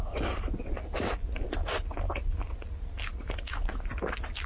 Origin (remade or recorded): recorded